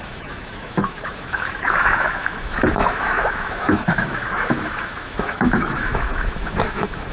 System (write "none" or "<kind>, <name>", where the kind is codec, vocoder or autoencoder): autoencoder, DAC-VAE